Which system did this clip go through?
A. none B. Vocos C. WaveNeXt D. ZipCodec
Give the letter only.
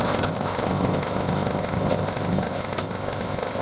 D